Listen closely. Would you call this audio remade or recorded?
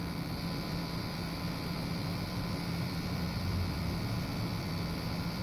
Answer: remade